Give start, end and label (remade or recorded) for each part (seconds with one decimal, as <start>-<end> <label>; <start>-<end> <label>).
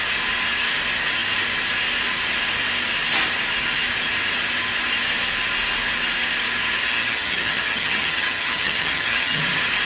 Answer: 0.0-6.8 recorded; 6.8-9.4 remade; 9.4-9.8 recorded